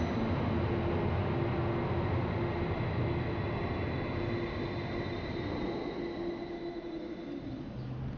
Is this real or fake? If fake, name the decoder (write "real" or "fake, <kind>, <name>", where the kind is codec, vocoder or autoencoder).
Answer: real